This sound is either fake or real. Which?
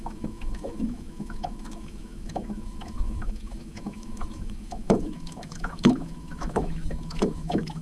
fake